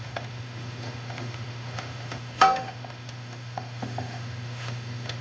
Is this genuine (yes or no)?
no